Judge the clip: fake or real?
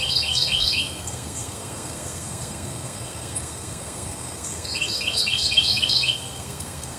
fake